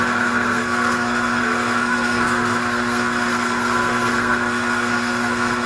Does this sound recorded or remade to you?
remade